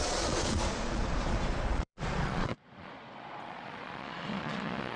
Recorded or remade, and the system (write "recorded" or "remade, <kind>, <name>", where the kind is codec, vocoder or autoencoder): remade, vocoder, Vocos